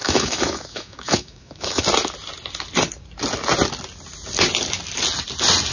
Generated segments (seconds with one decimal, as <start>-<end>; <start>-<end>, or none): 0.0-1.8